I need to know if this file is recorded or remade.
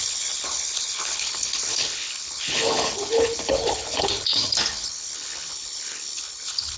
remade